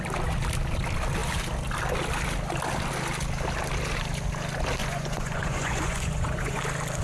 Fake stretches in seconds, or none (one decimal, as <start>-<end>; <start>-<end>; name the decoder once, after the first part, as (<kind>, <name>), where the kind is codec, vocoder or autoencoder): 4.8-6.6 (vocoder, Vocos)